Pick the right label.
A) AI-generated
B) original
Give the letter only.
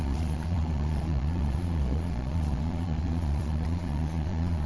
A